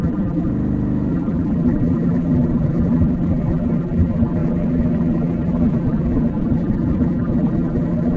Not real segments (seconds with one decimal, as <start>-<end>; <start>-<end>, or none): 0.0-0.5; 1.1-8.2